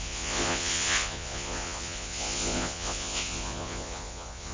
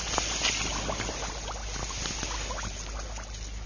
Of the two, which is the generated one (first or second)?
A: first